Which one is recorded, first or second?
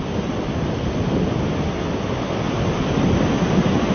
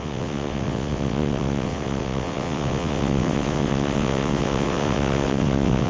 first